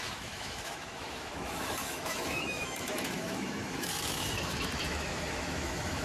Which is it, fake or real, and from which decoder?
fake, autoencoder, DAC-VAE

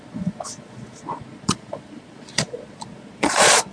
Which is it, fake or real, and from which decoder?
fake, vocoder, Vocos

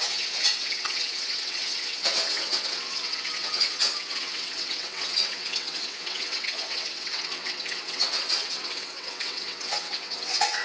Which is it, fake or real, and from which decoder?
fake, vocoder, WaveNeXt